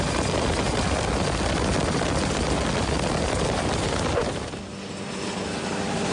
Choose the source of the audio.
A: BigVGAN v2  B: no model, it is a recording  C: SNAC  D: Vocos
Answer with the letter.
B